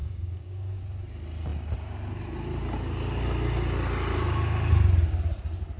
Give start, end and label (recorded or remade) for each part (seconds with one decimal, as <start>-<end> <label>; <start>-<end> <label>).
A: 0.0-0.8 remade; 0.8-5.8 recorded